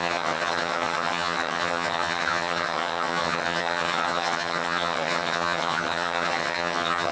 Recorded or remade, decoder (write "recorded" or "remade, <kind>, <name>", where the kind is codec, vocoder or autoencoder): remade, vocoder, HiFi-GAN